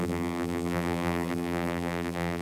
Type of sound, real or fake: fake